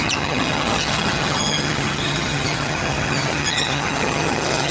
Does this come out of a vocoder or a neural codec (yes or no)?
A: yes